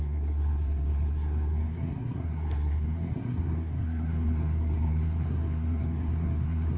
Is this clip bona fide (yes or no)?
no